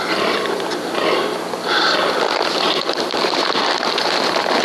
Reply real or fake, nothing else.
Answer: real